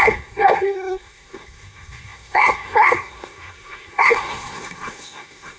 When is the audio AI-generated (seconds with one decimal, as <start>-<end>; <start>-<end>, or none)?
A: 0.0-5.6